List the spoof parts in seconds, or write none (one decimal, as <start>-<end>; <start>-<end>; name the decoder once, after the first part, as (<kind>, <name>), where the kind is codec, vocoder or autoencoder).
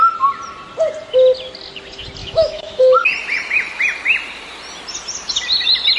2.2-2.8 (autoencoder, DAC-VAE)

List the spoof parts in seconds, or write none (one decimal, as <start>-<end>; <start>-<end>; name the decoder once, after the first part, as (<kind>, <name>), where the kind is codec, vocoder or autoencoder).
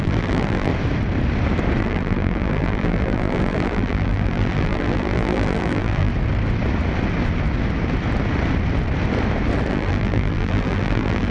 0.0-0.7 (vocoder, BigVGAN v2); 1.8-6.1; 9.7-11.3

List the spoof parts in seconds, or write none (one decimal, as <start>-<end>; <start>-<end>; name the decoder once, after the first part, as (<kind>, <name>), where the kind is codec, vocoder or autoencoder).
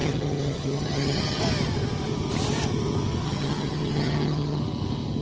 0.0-1.4 (vocoder, HiFi-GAN); 3.2-4.6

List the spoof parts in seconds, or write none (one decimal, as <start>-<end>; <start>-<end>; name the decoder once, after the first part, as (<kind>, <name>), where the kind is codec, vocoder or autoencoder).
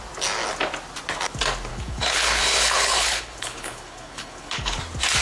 1.7-4.8 (codec, HILCodec)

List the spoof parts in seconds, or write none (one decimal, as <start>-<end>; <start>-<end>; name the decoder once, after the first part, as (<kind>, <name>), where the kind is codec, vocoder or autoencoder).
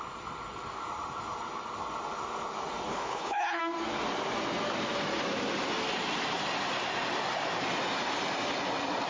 2.9-3.6 (codec, HILCodec)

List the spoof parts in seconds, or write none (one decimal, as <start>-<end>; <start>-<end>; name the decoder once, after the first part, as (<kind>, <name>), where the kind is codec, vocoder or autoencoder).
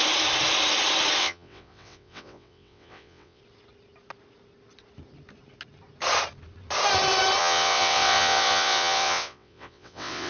1.2-3.4 (vocoder, WaveNeXt); 7.4-10.3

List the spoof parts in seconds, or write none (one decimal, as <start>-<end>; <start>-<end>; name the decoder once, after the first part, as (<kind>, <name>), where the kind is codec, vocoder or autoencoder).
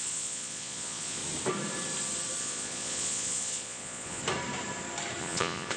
0.0-1.2 (vocoder, Vocos); 2.4-4.2; 5.2-5.8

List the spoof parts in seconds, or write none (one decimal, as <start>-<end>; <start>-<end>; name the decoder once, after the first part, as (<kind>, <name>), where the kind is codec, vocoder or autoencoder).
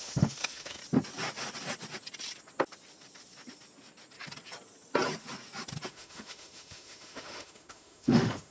0.0-0.8 (autoencoder, DAC-VAE); 5.9-8.5